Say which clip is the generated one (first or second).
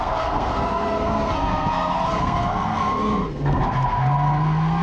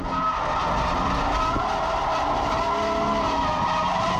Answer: first